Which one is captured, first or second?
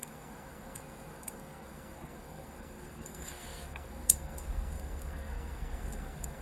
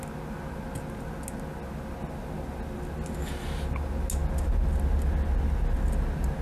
second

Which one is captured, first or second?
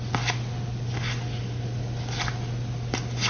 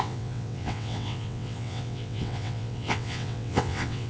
first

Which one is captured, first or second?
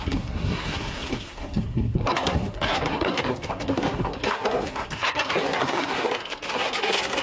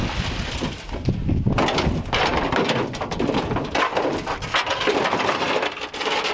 second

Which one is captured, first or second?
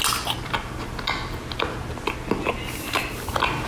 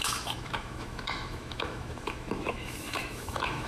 first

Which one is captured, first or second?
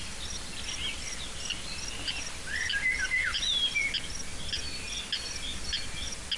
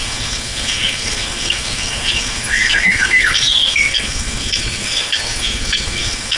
first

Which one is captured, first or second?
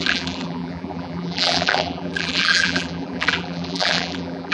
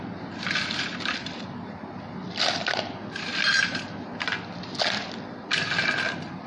second